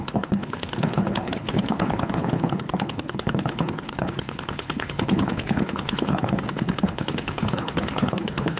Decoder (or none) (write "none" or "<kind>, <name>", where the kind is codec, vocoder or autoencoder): codec, HILCodec